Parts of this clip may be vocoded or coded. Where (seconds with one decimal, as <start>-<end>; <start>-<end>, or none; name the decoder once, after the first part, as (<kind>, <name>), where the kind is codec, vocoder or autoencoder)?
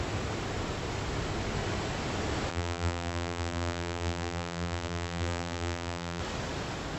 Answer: 2.5-6.2 (vocoder, BigVGAN v2)